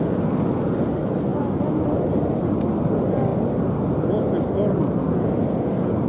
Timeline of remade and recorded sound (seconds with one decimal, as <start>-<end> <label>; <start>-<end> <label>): 0.0-6.1 recorded